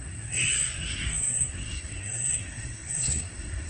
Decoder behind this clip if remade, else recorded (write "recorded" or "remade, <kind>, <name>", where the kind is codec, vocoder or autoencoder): remade, codec, SNAC